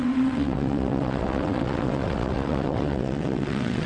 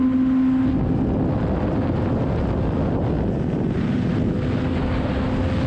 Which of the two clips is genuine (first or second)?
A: second